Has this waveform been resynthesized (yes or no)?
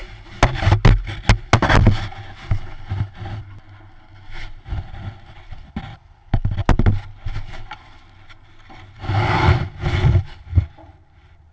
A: no